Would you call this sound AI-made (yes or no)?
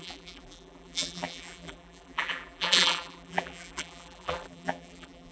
yes